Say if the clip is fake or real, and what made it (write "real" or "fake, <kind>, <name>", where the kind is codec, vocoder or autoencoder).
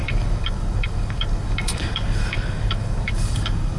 fake, codec, DAC